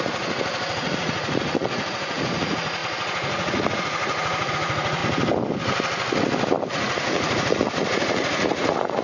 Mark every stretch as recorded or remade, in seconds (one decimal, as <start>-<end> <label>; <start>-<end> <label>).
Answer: 0.0-5.0 remade; 5.0-6.7 recorded; 6.7-9.0 remade